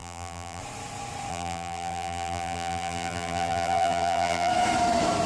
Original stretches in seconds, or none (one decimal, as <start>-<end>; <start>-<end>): 0.6-1.3; 4.5-5.3